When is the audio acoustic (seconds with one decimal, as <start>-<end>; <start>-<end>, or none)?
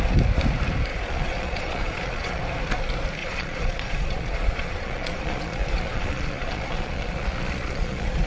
0.0-0.9; 2.4-3.2